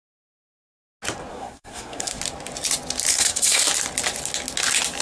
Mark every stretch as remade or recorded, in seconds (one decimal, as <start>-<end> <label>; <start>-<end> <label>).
0.0-1.3 recorded; 1.3-2.2 remade; 2.2-3.1 recorded; 3.1-3.7 remade; 3.7-5.0 recorded